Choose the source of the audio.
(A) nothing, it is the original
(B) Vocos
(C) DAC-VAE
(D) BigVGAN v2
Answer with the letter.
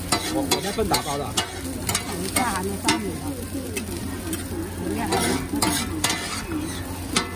A